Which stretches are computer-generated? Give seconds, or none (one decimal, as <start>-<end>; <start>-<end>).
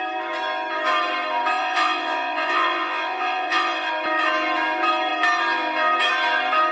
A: 1.6-3.9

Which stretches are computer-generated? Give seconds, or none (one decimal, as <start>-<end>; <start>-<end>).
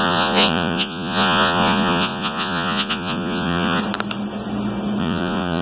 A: 0.0-3.8; 5.0-5.6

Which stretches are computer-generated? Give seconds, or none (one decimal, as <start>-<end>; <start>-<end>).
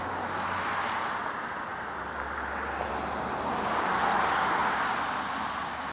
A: none